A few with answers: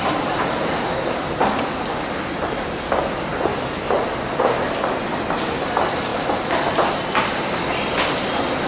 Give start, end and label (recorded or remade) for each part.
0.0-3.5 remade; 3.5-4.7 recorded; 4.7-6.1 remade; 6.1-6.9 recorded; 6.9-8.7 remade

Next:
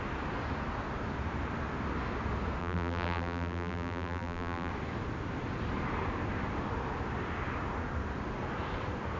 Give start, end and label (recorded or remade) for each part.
0.0-2.6 recorded; 2.6-4.7 remade; 4.7-9.2 recorded

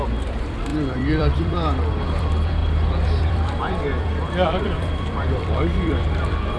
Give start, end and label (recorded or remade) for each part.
0.0-6.6 remade

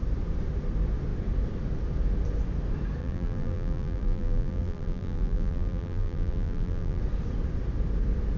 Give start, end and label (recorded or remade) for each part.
0.0-3.0 recorded; 3.0-7.0 remade; 7.0-8.4 recorded

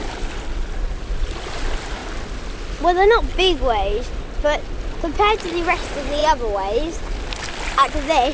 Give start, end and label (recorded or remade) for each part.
0.0-3.3 recorded; 3.3-4.2 remade; 4.2-8.3 recorded